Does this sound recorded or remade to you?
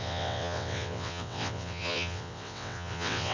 remade